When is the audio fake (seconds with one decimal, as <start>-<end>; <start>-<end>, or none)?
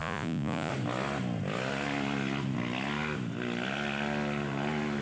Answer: 0.0-0.7